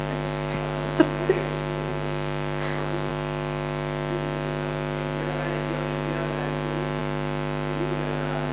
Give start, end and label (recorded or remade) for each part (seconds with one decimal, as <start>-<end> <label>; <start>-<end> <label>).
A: 0.0-8.5 recorded